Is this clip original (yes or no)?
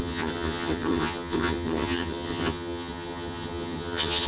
no